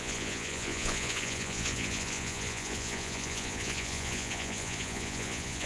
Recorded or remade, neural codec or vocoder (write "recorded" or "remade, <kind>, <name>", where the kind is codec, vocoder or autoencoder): remade, vocoder, Vocos